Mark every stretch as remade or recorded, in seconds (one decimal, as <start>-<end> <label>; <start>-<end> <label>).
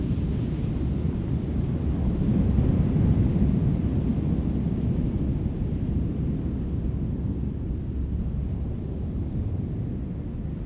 0.0-10.7 recorded